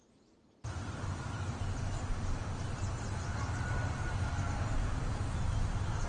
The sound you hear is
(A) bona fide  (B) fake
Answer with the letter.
A